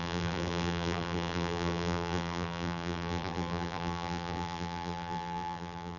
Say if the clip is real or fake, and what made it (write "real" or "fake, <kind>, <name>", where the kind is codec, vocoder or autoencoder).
fake, vocoder, BigVGAN v2